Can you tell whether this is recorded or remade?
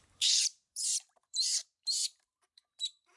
remade